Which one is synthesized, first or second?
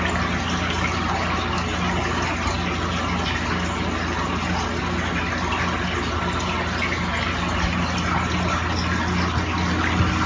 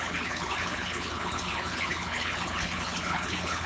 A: second